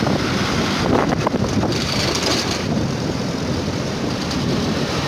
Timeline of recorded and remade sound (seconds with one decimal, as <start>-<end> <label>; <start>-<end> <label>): 0.0-1.7 recorded; 1.7-5.1 remade